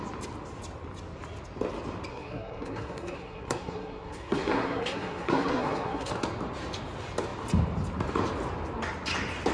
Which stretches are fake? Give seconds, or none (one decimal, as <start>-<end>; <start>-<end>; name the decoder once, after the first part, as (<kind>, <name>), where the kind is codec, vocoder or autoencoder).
2.1-6.1 (codec, SNAC)